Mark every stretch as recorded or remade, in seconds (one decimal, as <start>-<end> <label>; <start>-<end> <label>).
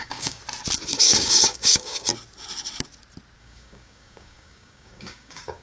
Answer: 0.0-0.4 remade; 0.4-1.0 recorded; 1.0-2.1 remade; 2.1-3.4 recorded; 3.4-5.6 remade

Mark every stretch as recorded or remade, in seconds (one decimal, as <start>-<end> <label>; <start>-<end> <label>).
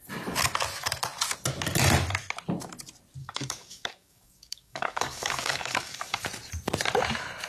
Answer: 0.0-3.2 recorded; 3.2-6.2 remade; 6.2-7.5 recorded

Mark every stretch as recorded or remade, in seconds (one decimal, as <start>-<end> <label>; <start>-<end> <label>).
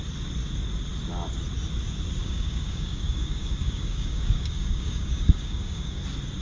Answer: 0.0-2.2 recorded; 2.2-6.0 remade; 6.0-6.4 recorded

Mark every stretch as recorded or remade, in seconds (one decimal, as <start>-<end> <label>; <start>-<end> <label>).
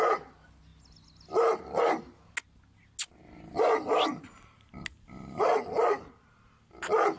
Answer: 0.0-7.2 recorded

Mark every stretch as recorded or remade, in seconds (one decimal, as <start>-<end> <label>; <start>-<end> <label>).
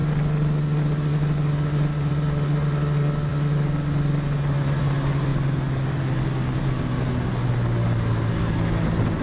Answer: 0.0-9.2 recorded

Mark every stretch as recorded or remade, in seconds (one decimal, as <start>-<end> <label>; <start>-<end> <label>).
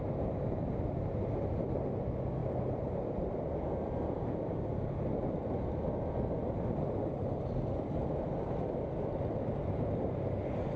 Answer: 0.0-10.8 recorded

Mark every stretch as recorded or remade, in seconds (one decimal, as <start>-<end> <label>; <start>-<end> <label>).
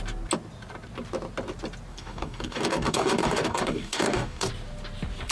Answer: 0.0-1.9 recorded; 1.9-4.5 remade; 4.5-5.3 recorded